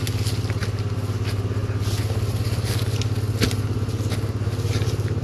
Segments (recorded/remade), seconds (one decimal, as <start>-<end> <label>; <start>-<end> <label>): 0.0-5.2 recorded